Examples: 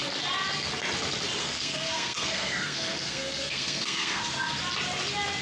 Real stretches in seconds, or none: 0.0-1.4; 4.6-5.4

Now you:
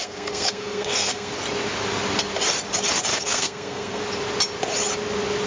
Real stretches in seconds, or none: 1.3-3.1; 4.0-5.5

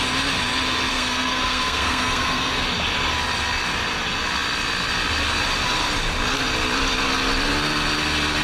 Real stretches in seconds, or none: 0.0-0.9; 2.5-8.4

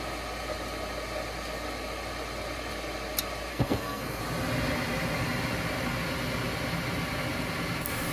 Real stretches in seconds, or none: 0.0-3.5; 4.2-8.1